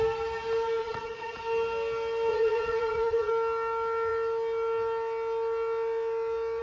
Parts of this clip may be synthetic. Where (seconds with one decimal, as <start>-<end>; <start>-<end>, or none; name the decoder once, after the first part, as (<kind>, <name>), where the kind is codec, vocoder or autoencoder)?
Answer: 0.8-1.4 (vocoder, Vocos); 2.3-3.3